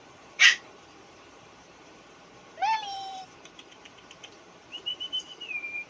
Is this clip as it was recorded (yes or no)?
no